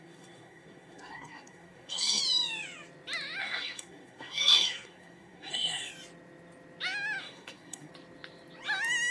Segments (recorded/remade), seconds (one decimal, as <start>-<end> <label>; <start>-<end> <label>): 0.0-2.2 remade; 2.2-3.4 recorded; 3.4-5.9 remade; 5.9-7.2 recorded; 7.2-7.9 remade; 7.9-9.1 recorded